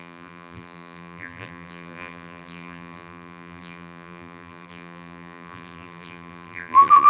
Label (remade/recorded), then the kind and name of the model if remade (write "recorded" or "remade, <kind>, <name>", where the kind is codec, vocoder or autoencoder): remade, vocoder, BigVGAN v2